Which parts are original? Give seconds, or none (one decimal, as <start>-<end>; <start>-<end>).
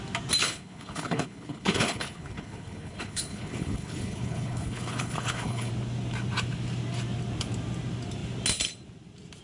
0.0-0.4; 5.7-9.4